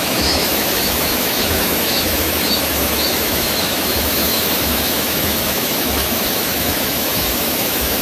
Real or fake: fake